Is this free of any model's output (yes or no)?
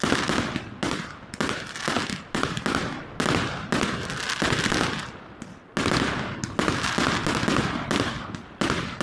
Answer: yes